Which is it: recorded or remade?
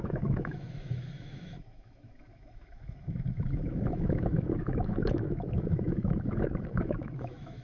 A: remade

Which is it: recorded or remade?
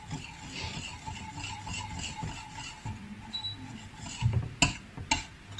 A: recorded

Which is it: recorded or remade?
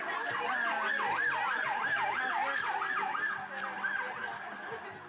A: recorded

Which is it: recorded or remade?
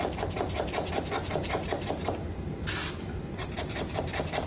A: remade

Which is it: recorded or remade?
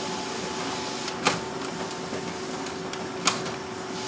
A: recorded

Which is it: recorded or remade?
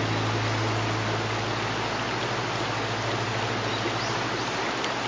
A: recorded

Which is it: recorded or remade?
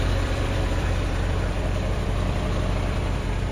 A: remade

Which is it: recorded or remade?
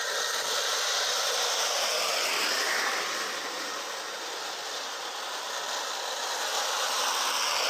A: recorded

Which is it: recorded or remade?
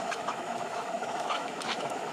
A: remade